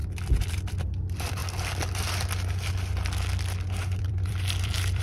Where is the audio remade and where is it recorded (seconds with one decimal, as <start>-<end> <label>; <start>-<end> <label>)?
0.0-0.5 recorded; 0.5-1.4 remade; 1.4-4.0 recorded; 4.0-5.0 remade